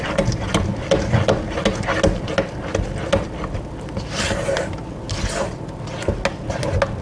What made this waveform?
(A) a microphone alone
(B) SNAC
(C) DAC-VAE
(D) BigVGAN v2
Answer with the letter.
A